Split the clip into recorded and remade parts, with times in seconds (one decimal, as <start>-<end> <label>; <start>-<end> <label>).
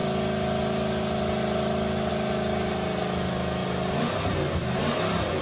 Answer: 0.0-5.4 recorded